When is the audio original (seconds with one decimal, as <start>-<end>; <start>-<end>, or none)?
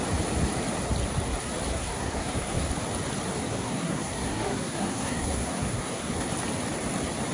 0.0-1.7; 2.7-3.5; 6.3-7.3